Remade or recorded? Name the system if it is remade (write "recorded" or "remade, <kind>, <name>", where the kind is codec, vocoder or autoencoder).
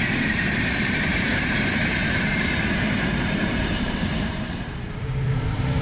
remade, vocoder, BigVGAN v2